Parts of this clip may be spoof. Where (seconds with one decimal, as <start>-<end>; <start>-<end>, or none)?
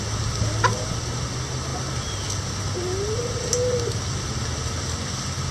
none